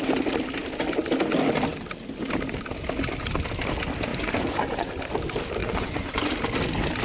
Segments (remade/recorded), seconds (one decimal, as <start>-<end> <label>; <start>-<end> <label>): 0.0-4.1 recorded; 4.1-4.9 remade; 4.9-5.6 recorded; 5.6-6.3 remade; 6.3-7.0 recorded